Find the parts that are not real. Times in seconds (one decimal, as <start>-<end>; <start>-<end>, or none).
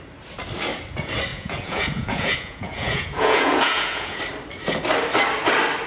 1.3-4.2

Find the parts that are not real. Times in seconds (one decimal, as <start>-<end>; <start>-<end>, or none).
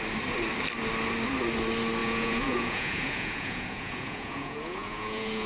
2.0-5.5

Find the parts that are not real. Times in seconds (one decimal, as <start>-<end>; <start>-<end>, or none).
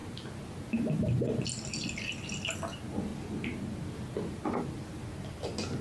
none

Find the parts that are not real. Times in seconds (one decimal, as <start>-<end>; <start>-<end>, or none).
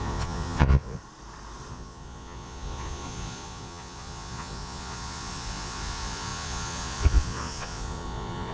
0.0-1.0; 1.7-8.5